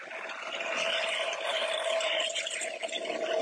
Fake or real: real